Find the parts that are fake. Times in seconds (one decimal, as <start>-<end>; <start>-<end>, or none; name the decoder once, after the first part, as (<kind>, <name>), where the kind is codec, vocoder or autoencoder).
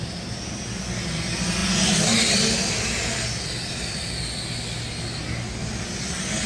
none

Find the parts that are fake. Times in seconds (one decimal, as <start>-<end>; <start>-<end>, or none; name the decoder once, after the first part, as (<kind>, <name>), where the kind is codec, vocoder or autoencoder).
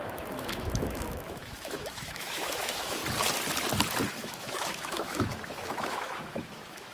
0.0-3.0 (autoencoder, DAC-VAE); 4.1-6.9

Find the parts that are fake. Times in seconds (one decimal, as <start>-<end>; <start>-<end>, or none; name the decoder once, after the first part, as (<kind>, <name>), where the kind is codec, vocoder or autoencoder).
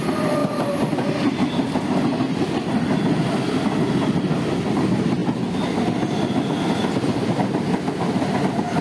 none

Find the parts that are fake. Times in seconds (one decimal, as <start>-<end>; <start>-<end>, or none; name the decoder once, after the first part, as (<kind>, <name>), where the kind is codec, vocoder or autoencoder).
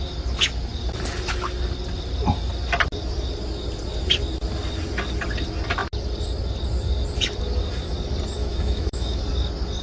8.4-9.2 (autoencoder, DAC-VAE)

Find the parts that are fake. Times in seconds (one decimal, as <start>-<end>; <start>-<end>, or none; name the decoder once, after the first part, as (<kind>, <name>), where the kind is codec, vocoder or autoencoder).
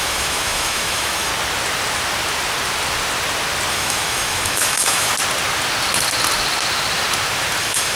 0.0-1.3 (autoencoder, DAC-VAE); 3.7-5.1; 7.6-8.0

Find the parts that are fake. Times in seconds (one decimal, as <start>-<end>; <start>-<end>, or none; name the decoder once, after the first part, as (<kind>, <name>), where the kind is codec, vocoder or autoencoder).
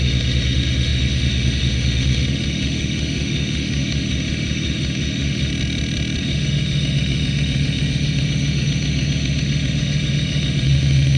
0.0-5.5 (autoencoder, DAC-VAE); 6.2-11.2